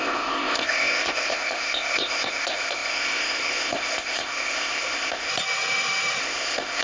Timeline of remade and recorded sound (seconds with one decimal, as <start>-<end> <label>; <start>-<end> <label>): 0.0-5.3 remade; 5.3-6.2 recorded; 6.2-6.8 remade